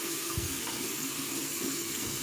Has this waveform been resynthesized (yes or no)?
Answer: yes